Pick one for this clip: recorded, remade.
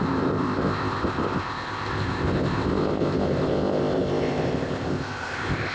remade